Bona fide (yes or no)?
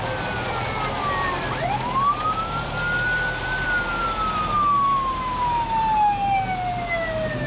yes